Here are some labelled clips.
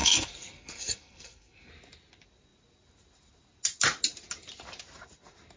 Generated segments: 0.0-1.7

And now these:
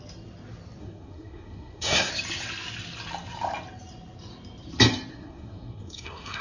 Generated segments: 0.8-2.1; 5.1-6.4

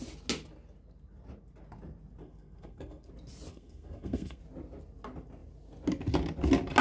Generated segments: 2.2-3.1; 3.5-4.4

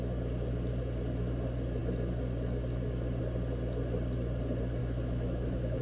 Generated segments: 4.8-5.8

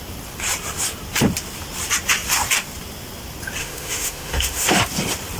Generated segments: 3.6-4.8

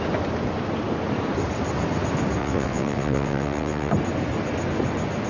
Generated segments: 2.4-3.9

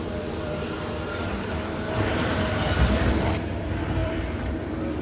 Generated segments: 0.0-5.0